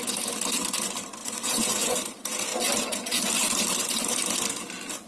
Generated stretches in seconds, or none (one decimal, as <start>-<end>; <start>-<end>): 1.2-2.0

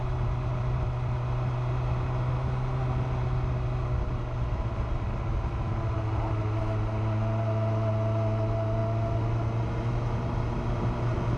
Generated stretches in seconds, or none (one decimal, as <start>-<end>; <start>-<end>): none

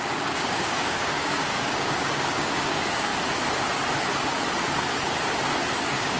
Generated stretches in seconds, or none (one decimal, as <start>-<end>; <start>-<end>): 0.0-3.1; 5.7-6.2

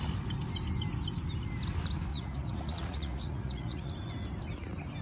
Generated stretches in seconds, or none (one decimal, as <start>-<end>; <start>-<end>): 2.1-3.9

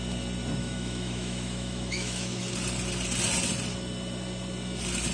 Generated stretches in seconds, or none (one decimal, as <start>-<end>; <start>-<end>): 0.6-2.4

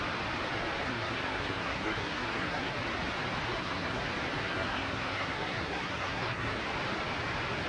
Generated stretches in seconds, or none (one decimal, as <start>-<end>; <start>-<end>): 0.8-2.7; 3.5-4.0; 4.4-6.6